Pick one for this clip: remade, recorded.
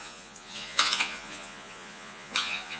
remade